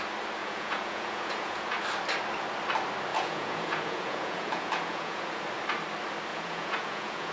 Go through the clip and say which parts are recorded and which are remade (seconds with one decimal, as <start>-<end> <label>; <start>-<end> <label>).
0.0-0.4 recorded; 0.4-1.8 remade; 1.8-3.1 recorded; 3.1-5.4 remade; 5.4-6.3 recorded; 6.3-7.3 remade